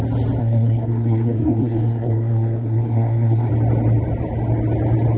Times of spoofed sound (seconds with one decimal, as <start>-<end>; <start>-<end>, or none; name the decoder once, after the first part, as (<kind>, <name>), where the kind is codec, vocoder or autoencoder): 0.4-3.5 (codec, SNAC)